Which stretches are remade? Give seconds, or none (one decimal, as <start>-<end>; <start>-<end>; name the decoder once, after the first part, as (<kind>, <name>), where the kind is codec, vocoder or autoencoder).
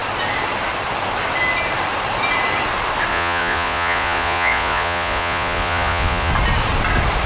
3.1-6.3 (vocoder, Vocos)